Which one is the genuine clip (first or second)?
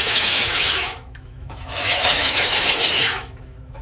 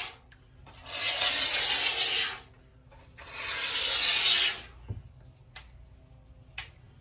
second